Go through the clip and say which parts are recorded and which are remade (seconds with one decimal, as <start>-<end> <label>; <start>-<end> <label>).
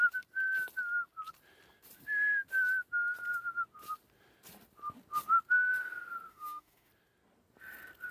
0.0-6.3 recorded; 6.3-6.9 remade; 6.9-8.1 recorded